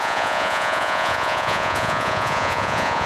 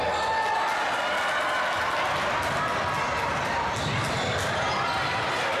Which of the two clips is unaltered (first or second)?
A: second